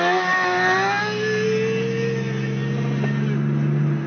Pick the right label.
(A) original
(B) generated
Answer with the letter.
A